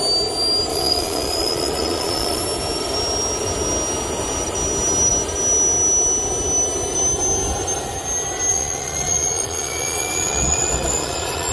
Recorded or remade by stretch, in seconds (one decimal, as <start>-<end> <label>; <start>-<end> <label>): 0.0-0.7 recorded; 0.7-2.4 remade; 2.4-8.5 recorded; 8.5-11.5 remade

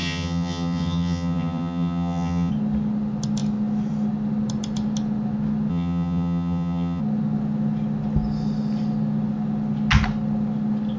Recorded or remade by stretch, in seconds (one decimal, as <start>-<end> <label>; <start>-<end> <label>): 0.0-2.5 remade; 2.5-5.7 recorded; 5.7-7.0 remade; 7.0-11.0 recorded

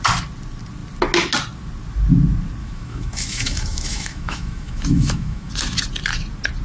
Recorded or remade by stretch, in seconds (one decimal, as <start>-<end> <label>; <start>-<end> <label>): 0.0-2.6 recorded; 2.6-5.5 remade; 5.5-6.6 recorded

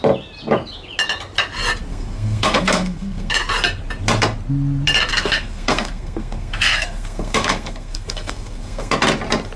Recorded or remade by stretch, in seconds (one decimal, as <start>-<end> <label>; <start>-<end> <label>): 0.0-1.9 recorded; 1.9-3.3 remade; 3.3-5.1 recorded; 5.1-8.9 remade; 8.9-9.6 recorded

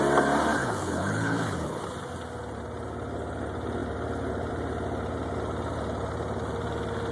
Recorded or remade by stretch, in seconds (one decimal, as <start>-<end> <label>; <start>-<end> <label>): 0.0-0.6 recorded; 0.6-1.8 remade; 1.8-7.1 recorded

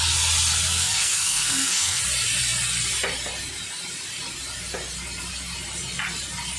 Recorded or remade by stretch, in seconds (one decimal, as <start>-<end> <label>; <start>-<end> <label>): 0.0-0.7 recorded; 0.7-2.0 remade; 2.0-6.6 recorded

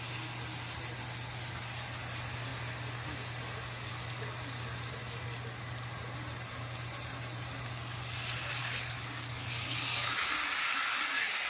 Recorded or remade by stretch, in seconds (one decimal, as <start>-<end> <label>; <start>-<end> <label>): 0.0-8.6 recorded; 8.6-10.2 remade; 10.2-10.6 recorded; 10.6-11.5 remade